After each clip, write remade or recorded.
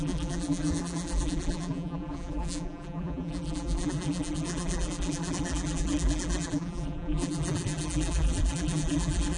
remade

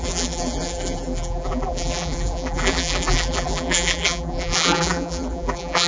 remade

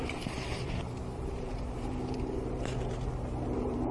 remade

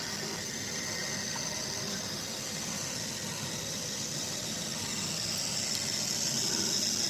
remade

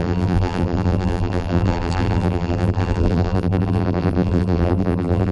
remade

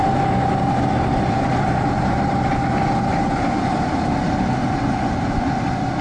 remade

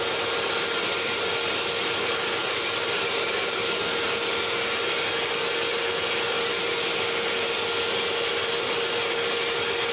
recorded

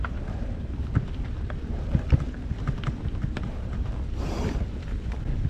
remade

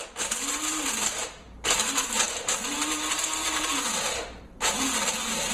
remade